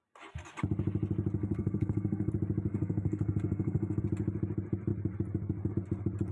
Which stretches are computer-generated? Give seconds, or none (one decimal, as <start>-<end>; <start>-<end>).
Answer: 1.4-2.3; 2.7-4.0